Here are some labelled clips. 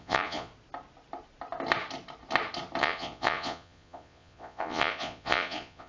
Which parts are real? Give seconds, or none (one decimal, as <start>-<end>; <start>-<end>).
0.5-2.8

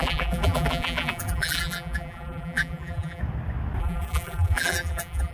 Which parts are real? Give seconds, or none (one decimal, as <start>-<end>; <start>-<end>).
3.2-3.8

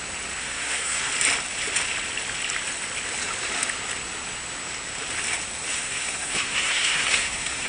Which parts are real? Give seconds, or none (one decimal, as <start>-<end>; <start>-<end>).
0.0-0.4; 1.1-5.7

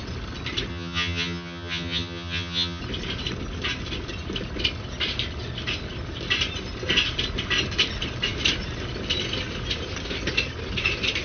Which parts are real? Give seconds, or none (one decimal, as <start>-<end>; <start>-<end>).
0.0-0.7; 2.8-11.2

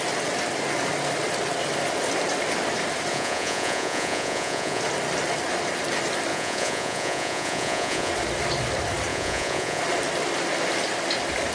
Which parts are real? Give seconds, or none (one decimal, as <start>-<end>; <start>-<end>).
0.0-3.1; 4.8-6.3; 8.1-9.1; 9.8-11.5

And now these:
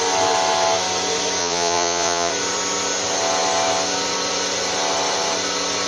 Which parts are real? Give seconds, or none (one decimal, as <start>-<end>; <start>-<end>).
0.0-1.4; 2.3-5.9

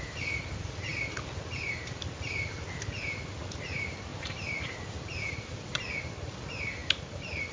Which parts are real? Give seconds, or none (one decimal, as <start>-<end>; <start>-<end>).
0.9-1.7

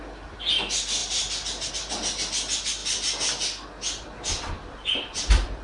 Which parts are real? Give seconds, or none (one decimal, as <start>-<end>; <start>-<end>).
0.0-5.6